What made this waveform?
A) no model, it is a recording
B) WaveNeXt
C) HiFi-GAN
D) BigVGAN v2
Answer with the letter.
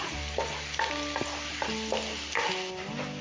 A